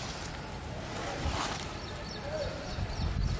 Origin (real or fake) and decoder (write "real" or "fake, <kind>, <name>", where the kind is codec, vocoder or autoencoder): real